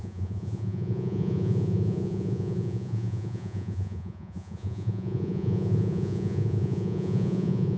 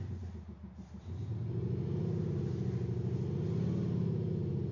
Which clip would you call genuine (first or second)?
second